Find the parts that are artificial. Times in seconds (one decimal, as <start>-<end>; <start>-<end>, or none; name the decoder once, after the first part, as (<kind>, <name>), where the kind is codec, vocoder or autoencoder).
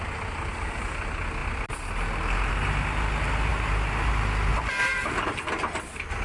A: 3.5-4.1 (vocoder, BigVGAN v2); 4.5-5.1